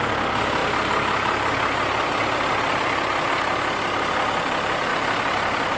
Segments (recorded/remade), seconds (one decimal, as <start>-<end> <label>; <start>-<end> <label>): 0.0-5.8 recorded